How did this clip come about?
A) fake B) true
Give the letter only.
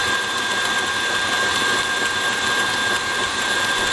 A